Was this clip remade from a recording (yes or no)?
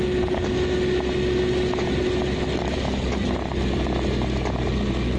no